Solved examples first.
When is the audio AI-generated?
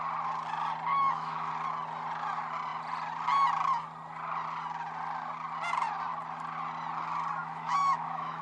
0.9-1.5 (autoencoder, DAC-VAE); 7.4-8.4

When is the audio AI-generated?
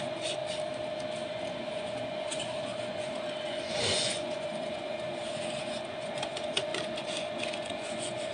0.0-0.4 (vocoder, Vocos); 1.3-8.3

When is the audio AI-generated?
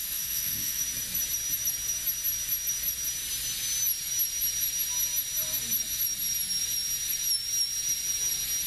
0.0-0.8 (autoencoder, DAC-VAE)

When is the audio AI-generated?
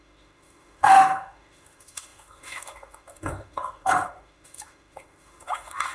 0.0-5.9 (autoencoder, DAC-VAE)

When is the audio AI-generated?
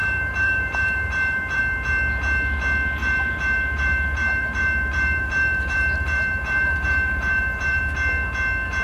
0.0-1.6 (vocoder, BigVGAN v2); 3.0-7.8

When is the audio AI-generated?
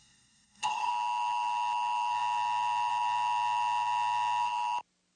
0.0-0.9 (codec, SNAC)